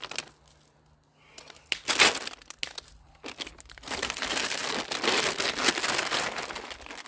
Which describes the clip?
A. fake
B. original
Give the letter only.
B